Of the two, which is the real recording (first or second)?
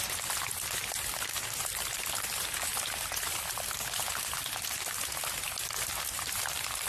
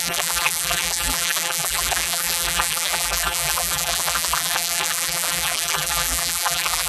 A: first